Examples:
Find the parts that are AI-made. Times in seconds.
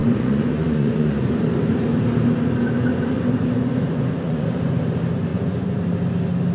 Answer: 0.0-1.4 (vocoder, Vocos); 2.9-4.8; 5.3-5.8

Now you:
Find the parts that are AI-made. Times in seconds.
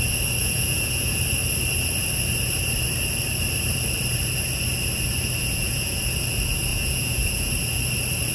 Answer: 0.4-1.2 (vocoder, Vocos); 5.4-6.0; 6.7-7.5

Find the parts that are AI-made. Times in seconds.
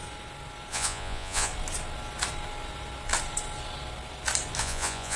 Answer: 0.7-1.5 (vocoder, Vocos); 4.6-5.2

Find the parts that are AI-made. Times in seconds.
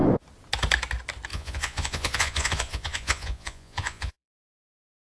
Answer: 1.3-4.4 (vocoder, Vocos)